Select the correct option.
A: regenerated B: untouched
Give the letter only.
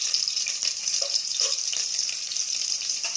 A